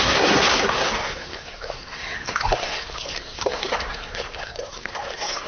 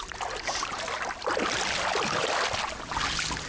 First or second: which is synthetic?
first